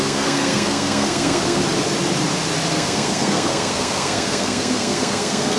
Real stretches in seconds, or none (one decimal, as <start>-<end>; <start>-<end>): 1.6-2.7